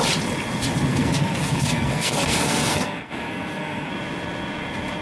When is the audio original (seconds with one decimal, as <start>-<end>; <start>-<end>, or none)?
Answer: 0.0-0.9; 3.9-5.0